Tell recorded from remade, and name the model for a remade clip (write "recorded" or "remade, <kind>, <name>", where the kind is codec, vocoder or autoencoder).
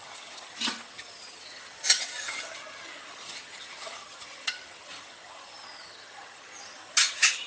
remade, vocoder, HiFi-GAN